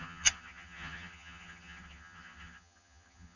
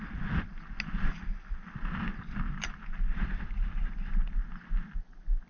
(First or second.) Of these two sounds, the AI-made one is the first